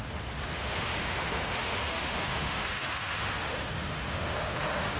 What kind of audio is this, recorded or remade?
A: remade